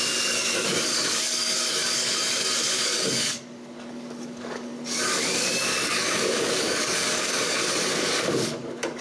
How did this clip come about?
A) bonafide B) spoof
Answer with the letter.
B